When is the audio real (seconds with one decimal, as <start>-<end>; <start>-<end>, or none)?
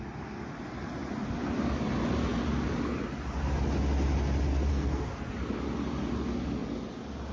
0.0-4.7; 5.3-7.3